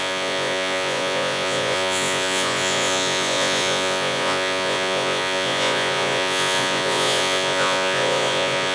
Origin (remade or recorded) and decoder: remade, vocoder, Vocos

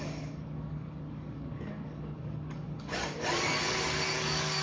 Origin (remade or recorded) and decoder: remade, codec, DAC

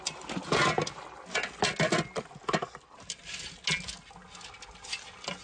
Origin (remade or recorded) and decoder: recorded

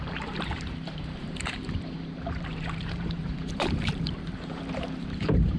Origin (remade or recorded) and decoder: remade, vocoder, BigVGAN v2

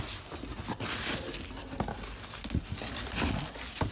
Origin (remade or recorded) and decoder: recorded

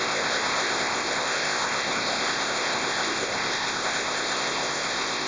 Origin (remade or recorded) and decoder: remade, codec, ZipCodec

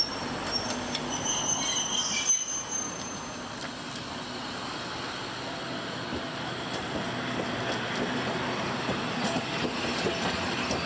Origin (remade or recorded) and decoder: recorded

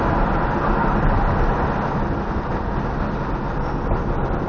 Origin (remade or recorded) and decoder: recorded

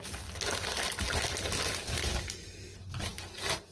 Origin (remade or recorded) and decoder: recorded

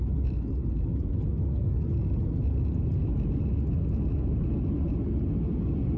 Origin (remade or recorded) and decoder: recorded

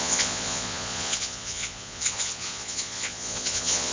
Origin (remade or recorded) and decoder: remade, vocoder, Vocos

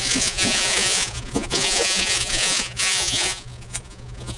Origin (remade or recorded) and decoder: remade, vocoder, Vocos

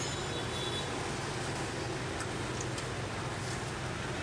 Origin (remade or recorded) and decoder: recorded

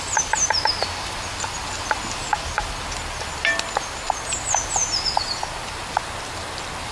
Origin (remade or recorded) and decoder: recorded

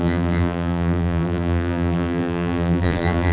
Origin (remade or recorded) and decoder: remade, vocoder, BigVGAN v2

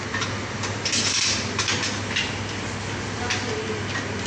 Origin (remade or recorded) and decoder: recorded